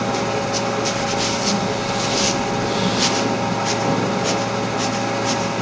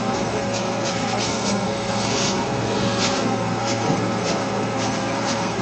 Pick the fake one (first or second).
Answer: second